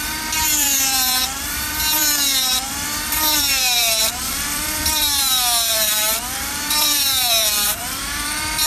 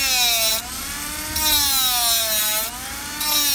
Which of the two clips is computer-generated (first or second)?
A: first